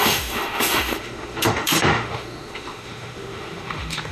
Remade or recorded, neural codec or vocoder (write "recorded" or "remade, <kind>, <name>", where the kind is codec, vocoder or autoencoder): remade, autoencoder, DAC-VAE